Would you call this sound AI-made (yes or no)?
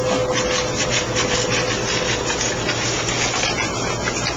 no